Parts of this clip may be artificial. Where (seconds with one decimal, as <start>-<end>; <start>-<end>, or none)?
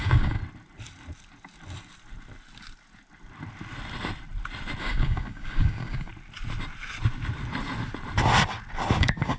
0.0-0.4; 4.8-6.1; 9.0-9.4